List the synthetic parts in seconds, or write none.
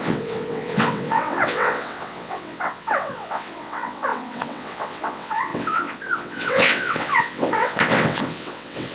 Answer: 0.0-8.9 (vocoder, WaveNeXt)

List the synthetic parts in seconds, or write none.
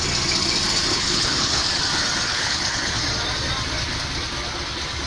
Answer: 0.9-1.8 (codec, HILCodec); 2.3-3.0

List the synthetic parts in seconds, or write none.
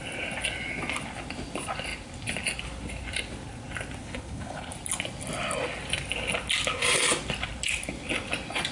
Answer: 4.0-4.7 (codec, HILCodec)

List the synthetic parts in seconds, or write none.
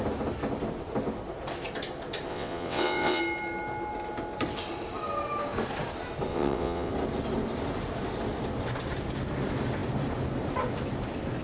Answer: 2.3-3.2 (vocoder, WaveNeXt); 6.3-6.9